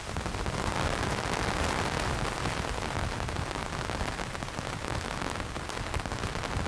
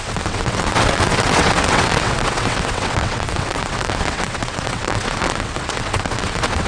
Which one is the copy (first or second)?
second